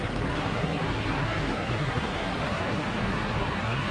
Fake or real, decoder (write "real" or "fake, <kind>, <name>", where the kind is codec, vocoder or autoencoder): fake, codec, SNAC